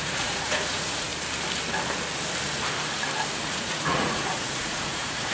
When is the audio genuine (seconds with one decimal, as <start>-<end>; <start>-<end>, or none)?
1.1-3.4